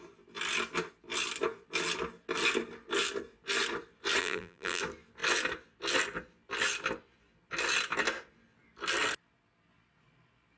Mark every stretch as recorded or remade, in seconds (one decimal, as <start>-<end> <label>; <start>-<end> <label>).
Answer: 0.0-4.2 recorded; 4.2-4.8 remade; 4.8-10.6 recorded